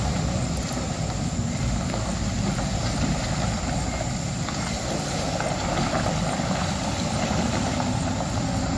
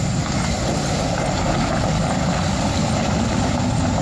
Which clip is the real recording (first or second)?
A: second